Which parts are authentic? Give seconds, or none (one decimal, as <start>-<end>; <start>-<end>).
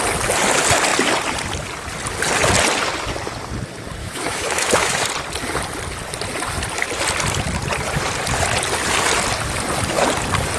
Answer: 0.0-4.0; 5.1-10.6